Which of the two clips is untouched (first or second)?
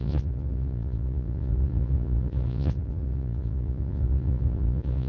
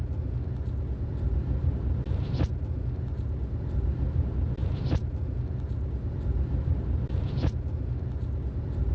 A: second